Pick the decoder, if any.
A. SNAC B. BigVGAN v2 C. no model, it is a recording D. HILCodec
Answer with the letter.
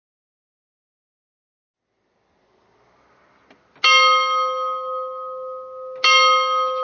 C